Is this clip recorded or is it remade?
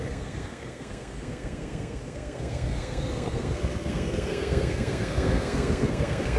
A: remade